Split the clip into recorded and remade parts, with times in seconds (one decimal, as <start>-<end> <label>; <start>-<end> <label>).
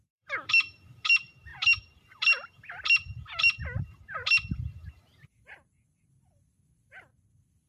0.0-7.7 remade